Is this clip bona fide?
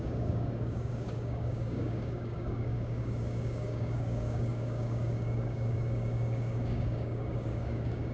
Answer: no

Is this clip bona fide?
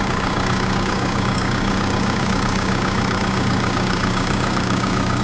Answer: no